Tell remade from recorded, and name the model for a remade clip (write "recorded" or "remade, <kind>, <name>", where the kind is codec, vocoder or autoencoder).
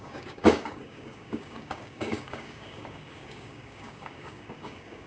remade, codec, DAC